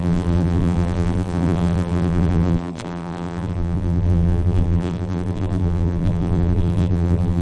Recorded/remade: remade